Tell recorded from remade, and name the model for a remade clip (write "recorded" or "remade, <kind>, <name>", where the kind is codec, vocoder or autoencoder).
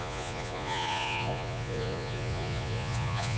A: remade, vocoder, Vocos